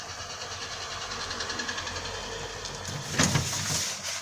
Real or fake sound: real